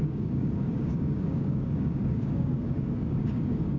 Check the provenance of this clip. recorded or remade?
remade